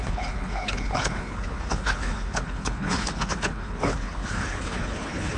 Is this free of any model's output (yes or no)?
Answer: no